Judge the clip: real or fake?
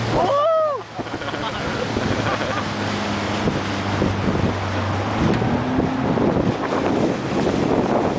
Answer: real